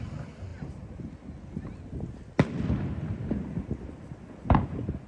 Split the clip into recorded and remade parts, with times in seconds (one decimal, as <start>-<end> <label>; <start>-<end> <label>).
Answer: 0.0-5.1 recorded